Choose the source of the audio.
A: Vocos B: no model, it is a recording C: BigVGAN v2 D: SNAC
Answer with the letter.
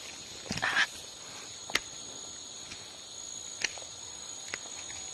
B